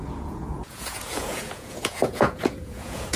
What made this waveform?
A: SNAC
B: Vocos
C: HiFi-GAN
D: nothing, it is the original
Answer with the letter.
B